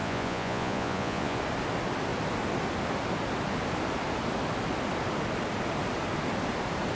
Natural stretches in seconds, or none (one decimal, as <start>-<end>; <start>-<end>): 1.4-6.9